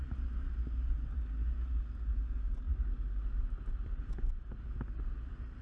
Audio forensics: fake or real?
real